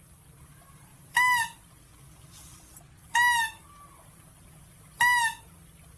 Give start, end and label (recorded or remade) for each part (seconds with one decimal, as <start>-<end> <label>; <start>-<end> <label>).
0.0-6.0 recorded